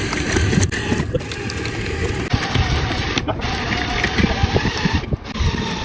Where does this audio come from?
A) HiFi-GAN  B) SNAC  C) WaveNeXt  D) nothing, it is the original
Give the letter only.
D